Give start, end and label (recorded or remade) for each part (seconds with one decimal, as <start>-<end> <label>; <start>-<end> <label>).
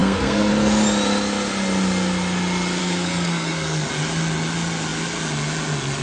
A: 0.0-0.5 remade; 0.5-2.8 recorded; 2.8-3.9 remade; 3.9-6.0 recorded